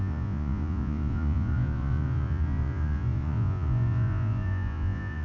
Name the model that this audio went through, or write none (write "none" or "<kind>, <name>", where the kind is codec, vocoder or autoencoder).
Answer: vocoder, Vocos